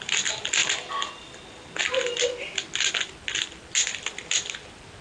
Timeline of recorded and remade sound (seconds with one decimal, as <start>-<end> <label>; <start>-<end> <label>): 0.0-5.0 recorded